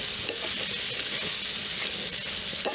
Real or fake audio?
real